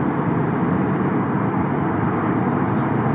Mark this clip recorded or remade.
recorded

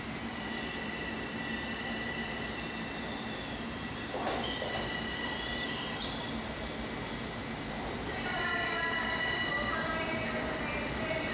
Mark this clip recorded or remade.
recorded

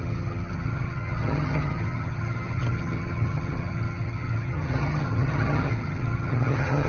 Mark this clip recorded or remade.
remade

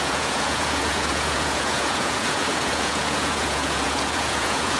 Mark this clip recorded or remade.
remade